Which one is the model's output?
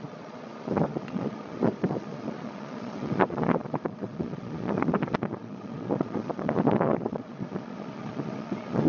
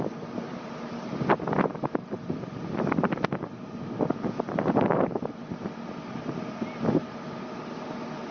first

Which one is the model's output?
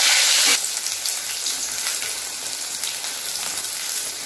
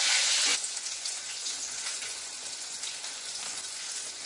second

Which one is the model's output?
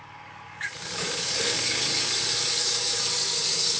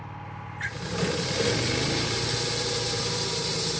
first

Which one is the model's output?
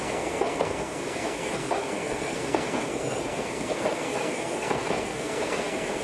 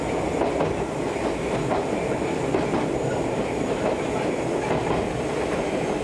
first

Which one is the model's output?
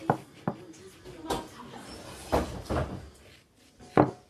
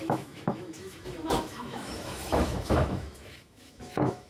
second